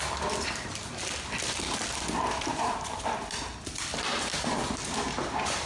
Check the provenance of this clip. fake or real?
fake